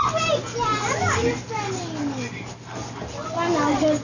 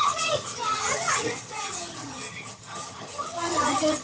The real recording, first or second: first